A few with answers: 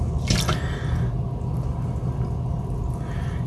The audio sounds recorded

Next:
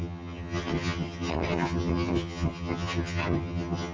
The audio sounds remade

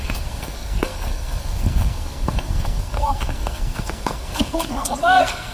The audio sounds remade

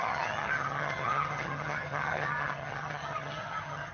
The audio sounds remade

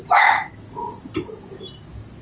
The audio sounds recorded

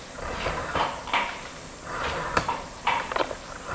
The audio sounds remade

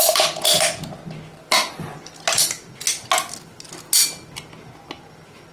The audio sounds recorded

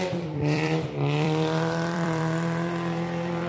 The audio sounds remade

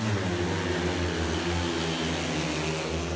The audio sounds recorded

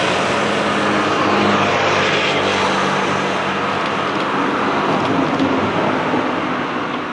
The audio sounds recorded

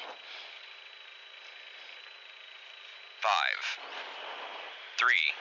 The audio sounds remade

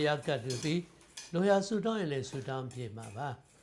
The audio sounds recorded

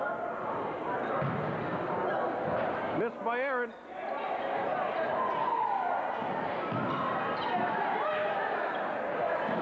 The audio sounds recorded